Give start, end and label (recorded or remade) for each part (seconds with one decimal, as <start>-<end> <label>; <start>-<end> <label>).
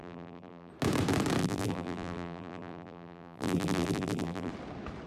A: 0.0-0.7 remade; 0.7-1.4 recorded; 1.4-4.5 remade; 4.5-5.1 recorded